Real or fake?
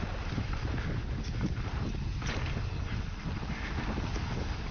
real